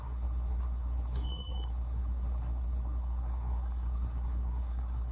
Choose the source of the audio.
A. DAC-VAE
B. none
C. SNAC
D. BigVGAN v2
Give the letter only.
C